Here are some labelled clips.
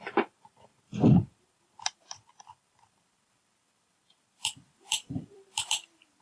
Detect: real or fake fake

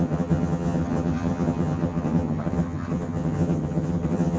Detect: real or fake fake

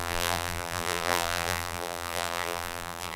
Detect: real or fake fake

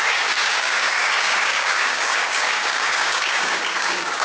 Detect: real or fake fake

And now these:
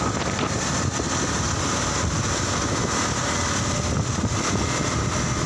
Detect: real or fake real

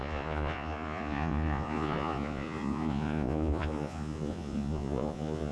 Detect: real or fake fake